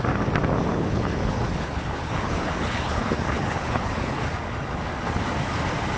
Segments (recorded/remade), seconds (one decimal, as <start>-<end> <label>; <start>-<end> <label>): 0.0-0.7 recorded; 0.7-4.2 remade; 4.2-6.0 recorded